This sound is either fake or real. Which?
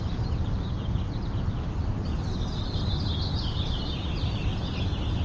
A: real